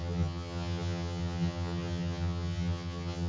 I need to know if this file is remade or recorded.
remade